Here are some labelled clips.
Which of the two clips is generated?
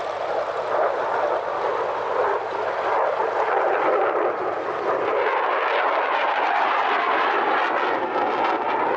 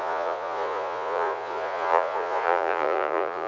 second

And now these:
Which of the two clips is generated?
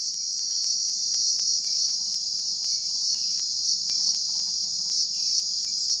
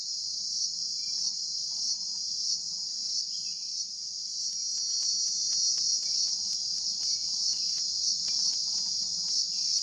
first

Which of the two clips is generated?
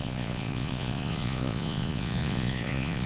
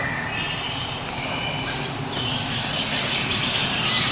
first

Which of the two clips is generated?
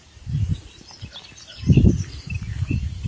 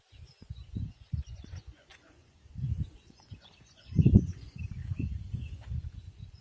second